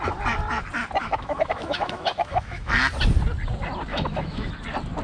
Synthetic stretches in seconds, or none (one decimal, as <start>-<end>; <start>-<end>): 1.0-2.7; 3.9-4.5